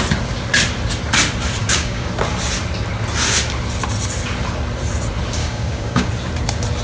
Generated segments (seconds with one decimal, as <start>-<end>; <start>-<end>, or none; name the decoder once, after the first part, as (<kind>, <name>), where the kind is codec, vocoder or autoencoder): 1.6-2.1 (codec, DAC); 5.4-6.1